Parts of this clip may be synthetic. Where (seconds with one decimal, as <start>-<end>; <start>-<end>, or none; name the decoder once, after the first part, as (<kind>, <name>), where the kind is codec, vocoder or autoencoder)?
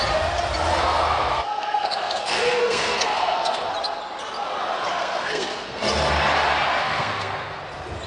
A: 0.7-3.7 (codec, SNAC); 4.9-5.8; 6.8-7.6